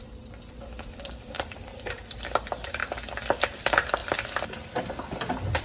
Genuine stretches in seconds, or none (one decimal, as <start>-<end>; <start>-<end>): 2.8-3.4; 4.0-5.6